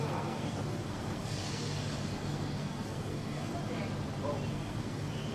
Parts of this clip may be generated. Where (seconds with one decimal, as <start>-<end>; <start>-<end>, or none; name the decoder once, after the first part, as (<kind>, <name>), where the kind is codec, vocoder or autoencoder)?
0.0-3.5 (codec, SNAC); 4.5-5.3

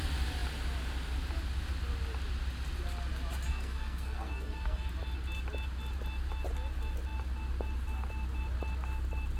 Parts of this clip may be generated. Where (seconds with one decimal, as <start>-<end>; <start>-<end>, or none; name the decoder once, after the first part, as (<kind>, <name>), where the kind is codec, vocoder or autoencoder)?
3.5-4.9 (codec, SNAC)

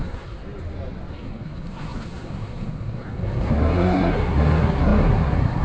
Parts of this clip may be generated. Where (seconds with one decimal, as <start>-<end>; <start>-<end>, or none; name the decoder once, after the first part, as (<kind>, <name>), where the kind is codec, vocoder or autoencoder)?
0.0-0.4 (codec, SNAC); 1.1-5.6

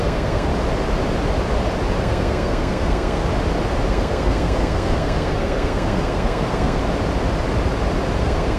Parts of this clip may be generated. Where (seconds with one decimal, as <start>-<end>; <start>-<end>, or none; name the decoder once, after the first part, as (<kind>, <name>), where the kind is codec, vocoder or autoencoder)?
0.0-0.5 (codec, SNAC); 2.0-3.3; 3.9-6.8; 8.2-8.6